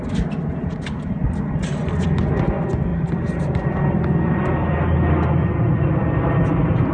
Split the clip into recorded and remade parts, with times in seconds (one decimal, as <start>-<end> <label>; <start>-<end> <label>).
0.0-6.9 recorded